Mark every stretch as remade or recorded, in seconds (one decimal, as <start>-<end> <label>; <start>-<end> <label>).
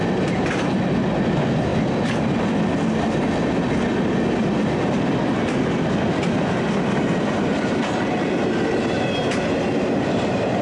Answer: 0.0-10.6 recorded